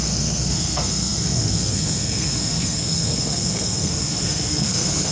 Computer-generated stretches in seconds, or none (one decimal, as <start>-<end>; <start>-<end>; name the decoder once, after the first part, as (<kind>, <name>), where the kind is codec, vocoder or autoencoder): 0.0-5.1 (codec, SNAC)